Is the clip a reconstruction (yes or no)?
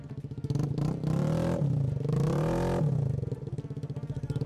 no